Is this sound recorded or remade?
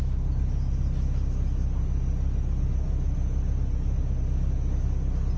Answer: recorded